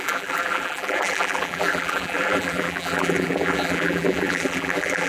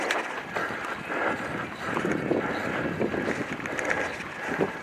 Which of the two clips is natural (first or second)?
second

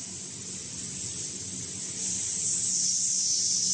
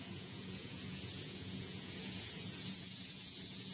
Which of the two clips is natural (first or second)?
first